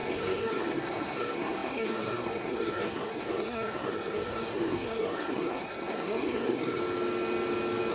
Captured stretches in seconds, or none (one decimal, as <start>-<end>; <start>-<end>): 6.8-7.9